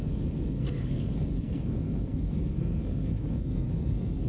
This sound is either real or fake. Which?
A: fake